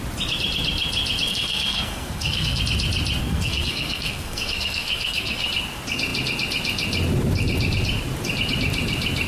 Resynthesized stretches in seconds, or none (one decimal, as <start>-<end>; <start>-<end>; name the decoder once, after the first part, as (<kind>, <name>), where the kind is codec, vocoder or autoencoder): 1.3-2.6 (codec, SNAC); 3.2-5.5